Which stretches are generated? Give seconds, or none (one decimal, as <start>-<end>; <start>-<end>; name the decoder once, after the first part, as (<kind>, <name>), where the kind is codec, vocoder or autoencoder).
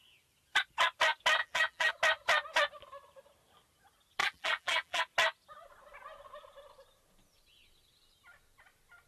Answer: 1.4-1.9 (vocoder, BigVGAN v2); 4.2-5.0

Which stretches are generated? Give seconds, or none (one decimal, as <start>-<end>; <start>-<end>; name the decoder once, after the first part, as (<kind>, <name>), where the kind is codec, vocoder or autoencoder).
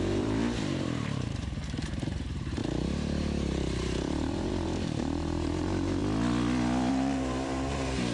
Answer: 0.0-6.0 (vocoder, BigVGAN v2); 6.9-8.1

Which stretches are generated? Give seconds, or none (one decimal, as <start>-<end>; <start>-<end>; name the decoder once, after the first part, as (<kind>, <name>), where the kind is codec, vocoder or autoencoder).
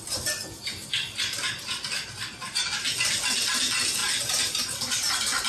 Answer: none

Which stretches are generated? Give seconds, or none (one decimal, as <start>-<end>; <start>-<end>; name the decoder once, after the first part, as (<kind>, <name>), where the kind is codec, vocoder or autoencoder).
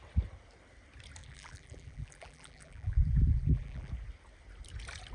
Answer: 1.2-3.9 (vocoder, BigVGAN v2)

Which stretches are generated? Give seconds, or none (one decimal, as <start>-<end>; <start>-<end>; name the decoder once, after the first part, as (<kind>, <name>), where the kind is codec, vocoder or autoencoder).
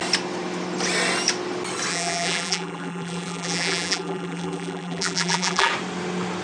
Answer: 1.9-5.7 (vocoder, BigVGAN v2)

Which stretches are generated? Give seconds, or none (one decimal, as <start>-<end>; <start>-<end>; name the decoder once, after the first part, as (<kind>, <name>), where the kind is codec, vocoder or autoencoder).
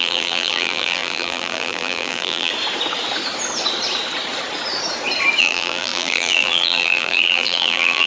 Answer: 0.0-2.5 (vocoder, BigVGAN v2); 5.4-8.1